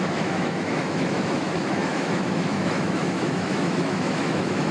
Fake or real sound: fake